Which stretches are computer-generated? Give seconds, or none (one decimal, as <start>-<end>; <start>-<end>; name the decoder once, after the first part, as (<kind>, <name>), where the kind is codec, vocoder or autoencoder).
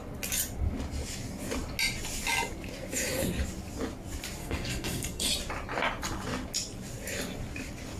4.4-5.3 (codec, SNAC)